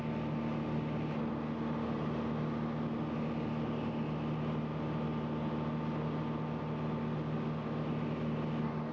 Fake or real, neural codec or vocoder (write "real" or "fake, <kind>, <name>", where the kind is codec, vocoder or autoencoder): real